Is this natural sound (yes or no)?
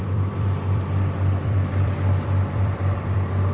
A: no